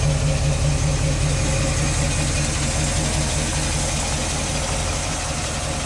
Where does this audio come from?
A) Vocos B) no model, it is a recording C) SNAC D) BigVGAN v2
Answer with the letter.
B